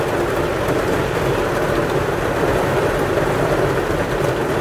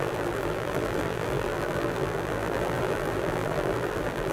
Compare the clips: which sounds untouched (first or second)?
first